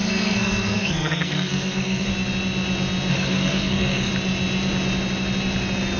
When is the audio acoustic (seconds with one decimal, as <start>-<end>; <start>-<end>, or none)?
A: 2.1-3.1; 4.1-6.0